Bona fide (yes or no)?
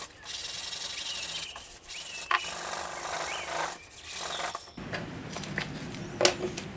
yes